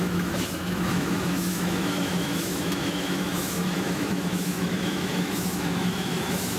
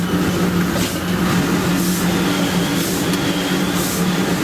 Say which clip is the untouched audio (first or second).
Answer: second